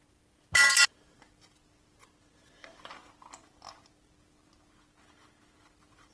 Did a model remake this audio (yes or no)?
no